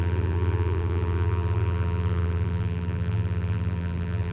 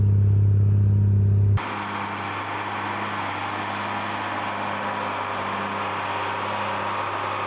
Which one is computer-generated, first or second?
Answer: first